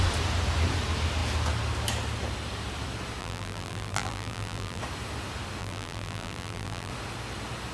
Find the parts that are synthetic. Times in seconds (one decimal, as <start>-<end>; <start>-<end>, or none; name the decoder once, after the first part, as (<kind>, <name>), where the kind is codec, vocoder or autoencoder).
3.2-4.8 (vocoder, BigVGAN v2); 5.6-6.9